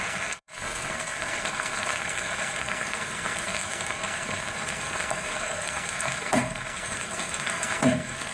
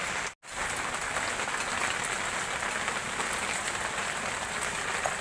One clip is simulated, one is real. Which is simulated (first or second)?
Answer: first